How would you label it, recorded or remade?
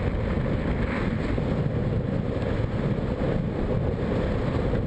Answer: recorded